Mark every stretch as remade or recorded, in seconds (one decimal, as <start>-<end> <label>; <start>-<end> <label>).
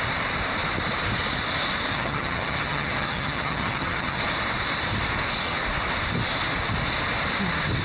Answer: 0.0-1.9 recorded; 1.9-4.2 remade; 4.2-7.8 recorded